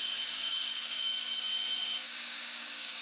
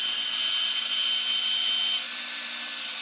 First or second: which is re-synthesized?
first